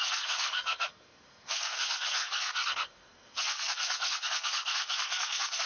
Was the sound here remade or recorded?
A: remade